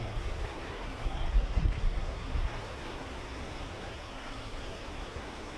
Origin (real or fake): fake